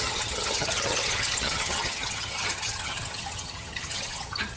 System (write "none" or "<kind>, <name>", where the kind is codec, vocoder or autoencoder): vocoder, HiFi-GAN